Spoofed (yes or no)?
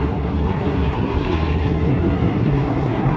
yes